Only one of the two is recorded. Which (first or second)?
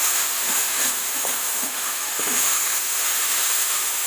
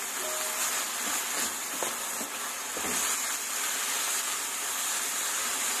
second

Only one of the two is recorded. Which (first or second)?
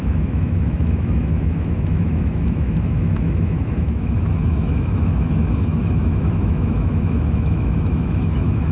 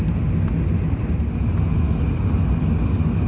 second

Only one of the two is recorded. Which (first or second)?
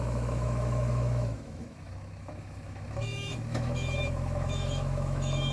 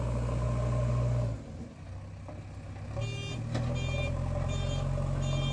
second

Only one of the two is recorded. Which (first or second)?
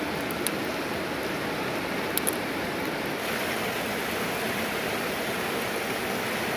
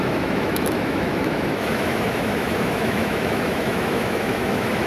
first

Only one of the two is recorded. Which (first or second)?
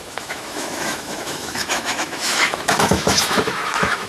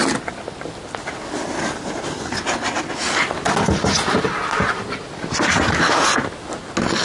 second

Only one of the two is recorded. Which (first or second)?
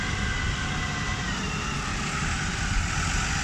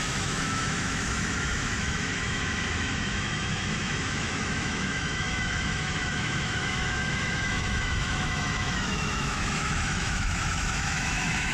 first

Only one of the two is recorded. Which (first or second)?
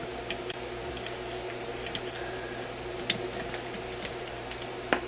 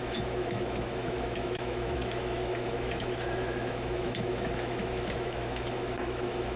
first